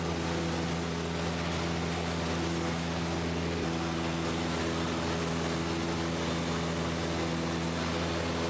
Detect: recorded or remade recorded